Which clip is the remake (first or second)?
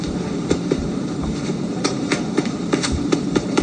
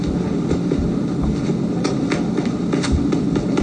first